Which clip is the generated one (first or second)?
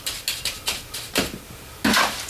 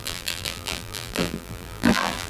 second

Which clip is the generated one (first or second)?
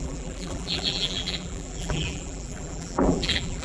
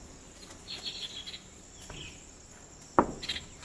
first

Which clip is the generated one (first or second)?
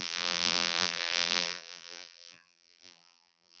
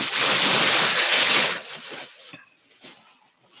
first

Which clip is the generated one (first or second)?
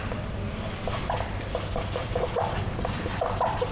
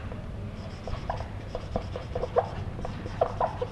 second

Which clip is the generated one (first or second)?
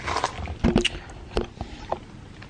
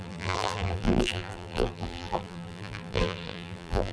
second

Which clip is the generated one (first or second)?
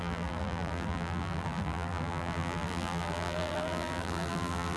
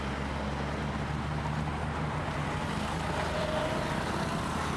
first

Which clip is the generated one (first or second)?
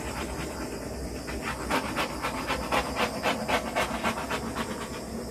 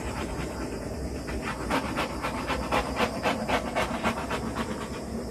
second